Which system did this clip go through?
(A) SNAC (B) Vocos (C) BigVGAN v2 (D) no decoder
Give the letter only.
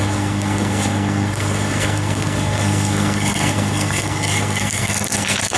A